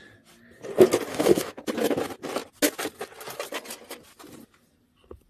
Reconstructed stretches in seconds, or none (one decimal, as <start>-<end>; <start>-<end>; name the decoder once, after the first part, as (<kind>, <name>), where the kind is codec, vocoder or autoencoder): 1.1-1.6 (autoencoder, DAC-VAE)

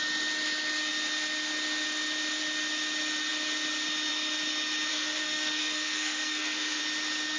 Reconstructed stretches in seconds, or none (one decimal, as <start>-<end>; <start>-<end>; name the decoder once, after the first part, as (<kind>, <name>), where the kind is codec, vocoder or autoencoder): 4.9-6.8 (codec, SNAC)

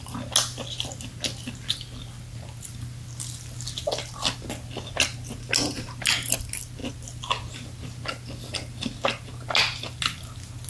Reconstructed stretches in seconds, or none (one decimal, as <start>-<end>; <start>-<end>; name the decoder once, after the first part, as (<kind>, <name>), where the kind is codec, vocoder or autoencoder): none

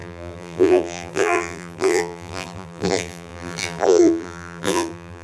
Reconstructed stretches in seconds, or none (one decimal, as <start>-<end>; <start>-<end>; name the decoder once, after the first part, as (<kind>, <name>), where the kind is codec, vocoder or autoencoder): 0.0-5.2 (vocoder, BigVGAN v2)

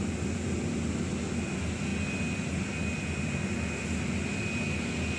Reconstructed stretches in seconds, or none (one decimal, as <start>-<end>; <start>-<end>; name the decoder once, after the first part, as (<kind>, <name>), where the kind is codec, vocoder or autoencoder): none

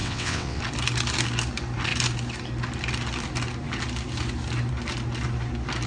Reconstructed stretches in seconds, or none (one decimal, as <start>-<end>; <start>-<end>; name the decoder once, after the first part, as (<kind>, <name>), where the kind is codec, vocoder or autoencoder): 0.0-0.6 (vocoder, WaveNeXt)

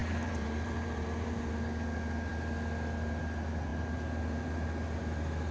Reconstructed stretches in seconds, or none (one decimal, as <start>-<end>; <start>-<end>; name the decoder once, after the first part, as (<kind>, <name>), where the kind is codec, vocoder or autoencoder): 0.0-1.5 (vocoder, BigVGAN v2)

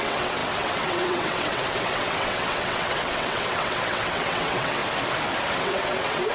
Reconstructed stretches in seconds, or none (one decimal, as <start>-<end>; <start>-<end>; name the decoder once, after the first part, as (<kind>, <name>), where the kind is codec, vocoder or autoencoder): 0.0-4.8 (vocoder, WaveNeXt); 5.5-6.3